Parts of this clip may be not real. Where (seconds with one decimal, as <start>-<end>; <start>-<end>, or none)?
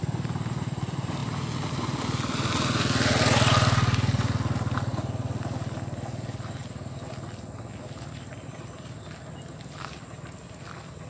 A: none